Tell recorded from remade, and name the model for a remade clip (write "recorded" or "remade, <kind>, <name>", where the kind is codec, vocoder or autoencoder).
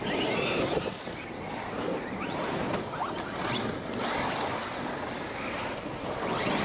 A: recorded